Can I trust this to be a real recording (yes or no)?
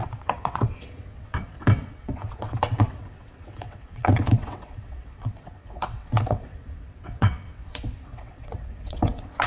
no